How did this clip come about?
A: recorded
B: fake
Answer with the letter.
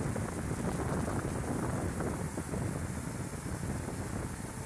A